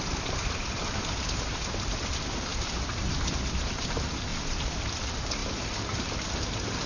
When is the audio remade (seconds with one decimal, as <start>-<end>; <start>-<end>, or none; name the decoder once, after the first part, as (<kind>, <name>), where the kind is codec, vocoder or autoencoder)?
0.0-5.4 (vocoder, BigVGAN v2)